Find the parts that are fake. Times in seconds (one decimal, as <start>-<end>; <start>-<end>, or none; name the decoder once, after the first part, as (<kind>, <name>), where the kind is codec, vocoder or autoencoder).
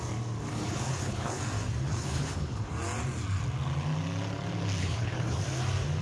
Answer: 0.5-1.4 (codec, HILCodec); 1.9-2.7; 4.8-5.4